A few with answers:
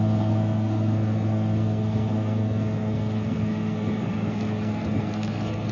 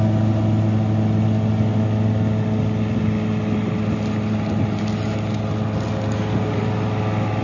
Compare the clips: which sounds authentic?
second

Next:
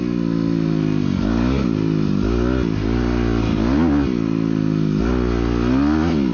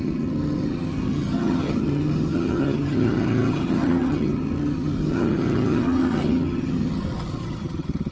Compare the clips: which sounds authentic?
first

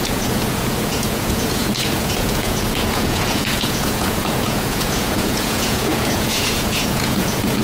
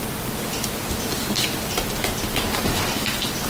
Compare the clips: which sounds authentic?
second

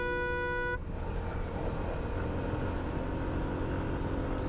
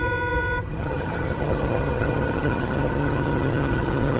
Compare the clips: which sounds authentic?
first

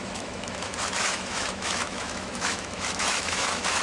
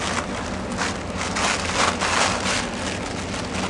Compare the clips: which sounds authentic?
second